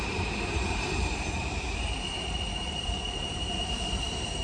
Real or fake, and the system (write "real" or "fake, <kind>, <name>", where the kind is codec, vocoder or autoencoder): fake, vocoder, BigVGAN v2